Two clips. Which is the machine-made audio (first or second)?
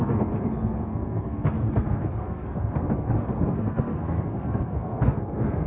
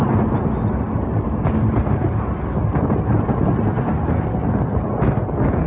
first